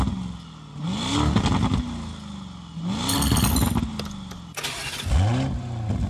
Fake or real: real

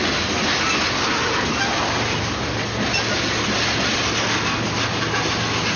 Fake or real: real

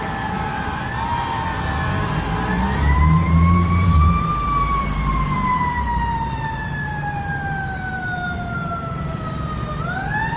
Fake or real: fake